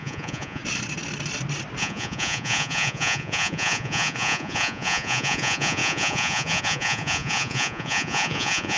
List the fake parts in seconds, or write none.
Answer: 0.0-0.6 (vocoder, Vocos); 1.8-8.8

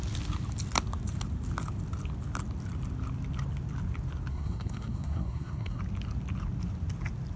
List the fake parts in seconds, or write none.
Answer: 4.3-5.8 (codec, SNAC)

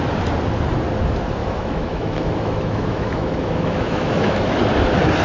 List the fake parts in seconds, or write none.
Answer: 1.4-4.5 (autoencoder, DAC-VAE)

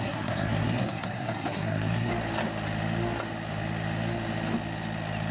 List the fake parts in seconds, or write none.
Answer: 0.0-2.1 (codec, SNAC)

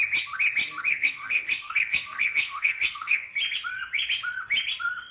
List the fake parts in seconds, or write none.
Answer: 0.9-3.3 (codec, SNAC)